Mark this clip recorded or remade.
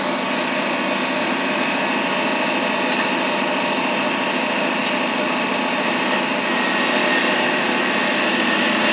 recorded